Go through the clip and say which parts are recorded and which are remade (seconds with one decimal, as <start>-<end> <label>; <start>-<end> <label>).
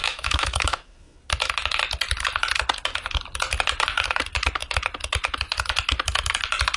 0.0-1.2 remade; 1.2-6.8 recorded